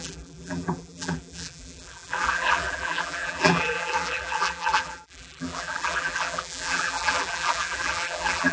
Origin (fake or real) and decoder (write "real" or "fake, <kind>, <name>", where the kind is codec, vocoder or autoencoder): fake, vocoder, BigVGAN v2